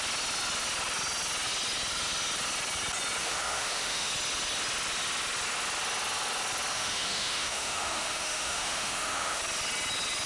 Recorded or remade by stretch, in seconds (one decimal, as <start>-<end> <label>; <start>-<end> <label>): 0.0-3.2 recorded; 3.2-4.1 remade; 4.1-6.7 recorded; 6.7-9.4 remade; 9.4-10.3 recorded